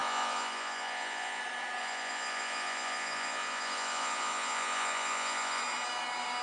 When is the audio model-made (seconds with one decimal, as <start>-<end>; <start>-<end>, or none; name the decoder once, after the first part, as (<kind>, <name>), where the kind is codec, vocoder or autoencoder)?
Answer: 0.0-1.4 (vocoder, Vocos); 1.8-5.6